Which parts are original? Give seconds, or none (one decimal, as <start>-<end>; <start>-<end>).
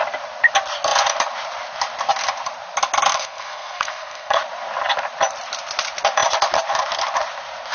0.0-3.1; 4.4-7.7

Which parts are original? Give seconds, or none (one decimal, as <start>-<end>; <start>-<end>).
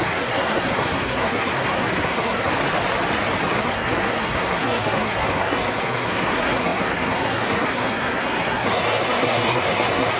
2.5-3.5